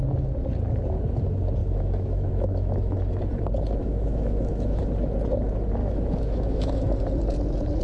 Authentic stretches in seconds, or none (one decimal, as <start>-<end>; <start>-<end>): 0.0-1.6; 3.3-3.8; 4.8-5.8; 7.0-7.8